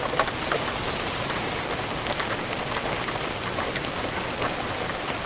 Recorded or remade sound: recorded